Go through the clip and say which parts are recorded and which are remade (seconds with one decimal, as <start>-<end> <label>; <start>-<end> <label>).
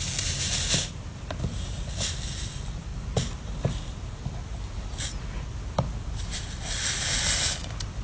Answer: 0.0-8.0 recorded